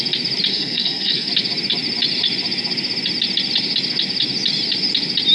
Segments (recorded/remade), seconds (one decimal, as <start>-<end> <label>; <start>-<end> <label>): 0.0-0.5 recorded; 0.5-1.3 remade; 1.3-5.3 recorded